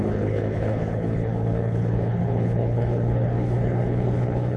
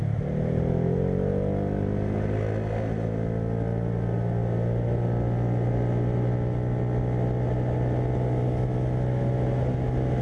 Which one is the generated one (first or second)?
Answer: first